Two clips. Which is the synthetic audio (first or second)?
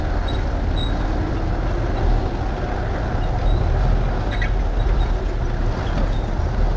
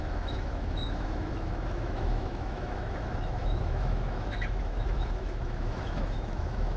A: second